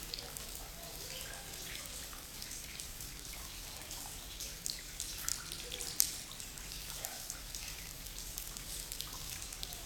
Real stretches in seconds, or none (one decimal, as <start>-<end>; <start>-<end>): 5.3-6.4